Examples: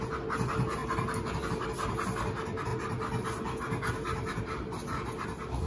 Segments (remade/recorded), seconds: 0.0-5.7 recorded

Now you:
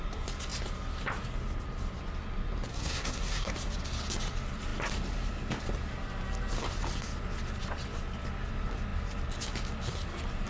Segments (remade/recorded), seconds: 0.0-2.7 recorded; 2.7-3.5 remade; 3.5-10.5 recorded